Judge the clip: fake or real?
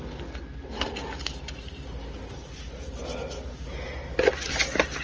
real